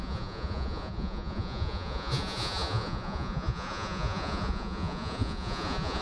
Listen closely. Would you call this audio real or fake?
fake